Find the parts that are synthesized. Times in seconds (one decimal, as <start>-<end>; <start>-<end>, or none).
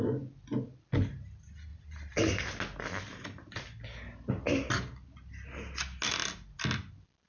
none